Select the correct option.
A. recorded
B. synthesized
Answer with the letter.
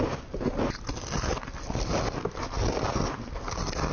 A